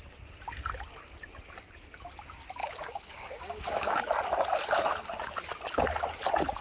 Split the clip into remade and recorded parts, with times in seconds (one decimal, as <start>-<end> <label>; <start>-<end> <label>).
0.0-2.6 recorded; 2.6-4.0 remade; 4.0-6.6 recorded